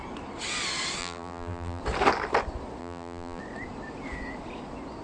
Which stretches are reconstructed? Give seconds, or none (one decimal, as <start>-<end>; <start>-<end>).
1.0-1.8; 2.8-3.4